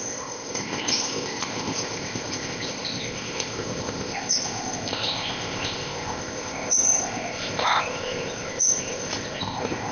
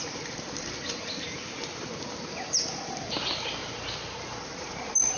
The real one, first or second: second